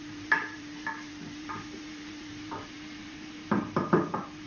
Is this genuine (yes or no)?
no